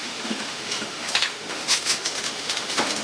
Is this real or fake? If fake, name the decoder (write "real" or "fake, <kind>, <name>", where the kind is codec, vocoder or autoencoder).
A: fake, autoencoder, DAC-VAE